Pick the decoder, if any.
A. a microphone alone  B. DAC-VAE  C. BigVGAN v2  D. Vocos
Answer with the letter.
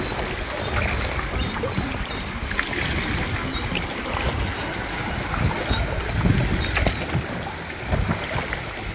A